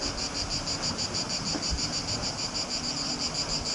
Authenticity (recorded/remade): recorded